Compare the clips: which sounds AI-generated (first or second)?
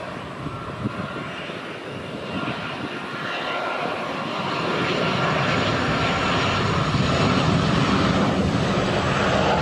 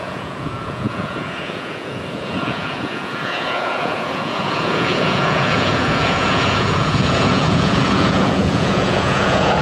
second